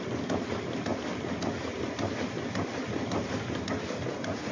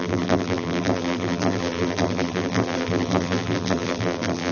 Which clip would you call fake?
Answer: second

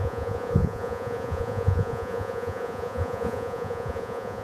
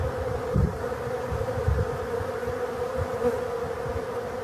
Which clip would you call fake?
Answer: first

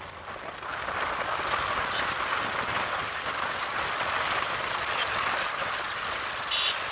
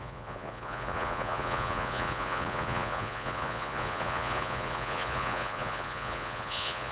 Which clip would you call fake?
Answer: second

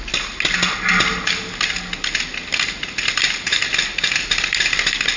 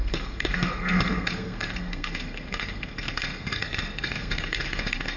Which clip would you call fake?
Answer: second